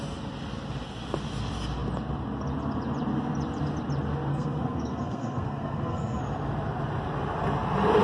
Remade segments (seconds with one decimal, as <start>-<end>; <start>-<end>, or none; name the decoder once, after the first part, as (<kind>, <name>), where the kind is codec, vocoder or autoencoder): 4.3-6.2 (codec, SNAC)